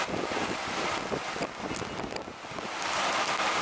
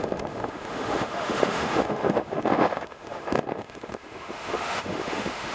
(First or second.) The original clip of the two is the first